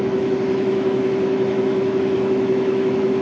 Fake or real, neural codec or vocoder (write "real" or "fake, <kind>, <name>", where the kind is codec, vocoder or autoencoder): fake, autoencoder, DAC-VAE